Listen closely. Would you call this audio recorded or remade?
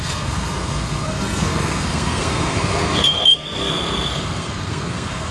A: remade